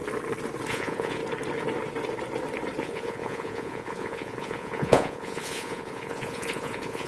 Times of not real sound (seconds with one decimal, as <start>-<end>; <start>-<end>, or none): 0.7-1.2; 2.8-7.1